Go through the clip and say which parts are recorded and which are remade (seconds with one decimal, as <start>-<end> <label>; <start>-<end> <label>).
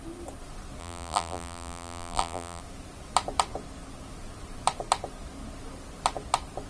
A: 0.0-0.8 recorded; 0.8-2.6 remade; 2.6-6.7 recorded